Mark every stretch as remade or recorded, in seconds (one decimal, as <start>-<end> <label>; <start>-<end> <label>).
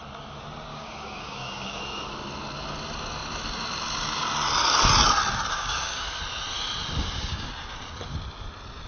0.0-0.7 recorded; 0.7-1.8 remade; 1.8-5.5 recorded; 5.5-6.2 remade; 6.2-7.0 recorded; 7.0-7.5 remade; 7.5-8.9 recorded